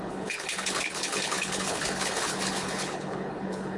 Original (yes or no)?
no